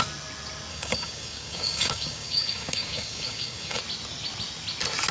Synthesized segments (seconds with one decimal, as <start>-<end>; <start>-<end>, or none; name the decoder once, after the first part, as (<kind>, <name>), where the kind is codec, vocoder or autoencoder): 0.7-3.8 (codec, DAC)